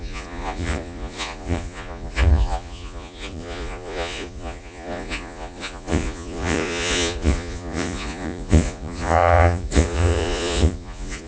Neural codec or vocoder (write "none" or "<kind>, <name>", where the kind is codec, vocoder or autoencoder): vocoder, Vocos